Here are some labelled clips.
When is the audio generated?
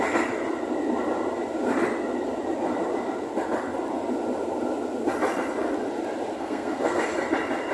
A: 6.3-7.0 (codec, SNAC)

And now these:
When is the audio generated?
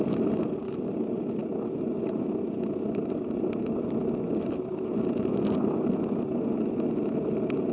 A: none